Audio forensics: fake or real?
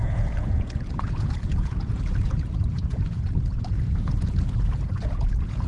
fake